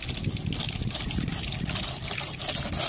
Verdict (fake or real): real